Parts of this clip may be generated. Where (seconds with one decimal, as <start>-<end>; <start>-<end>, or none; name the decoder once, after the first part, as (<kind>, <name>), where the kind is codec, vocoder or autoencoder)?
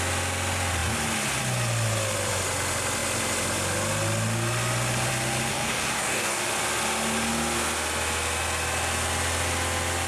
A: 5.5-6.4 (codec, DAC)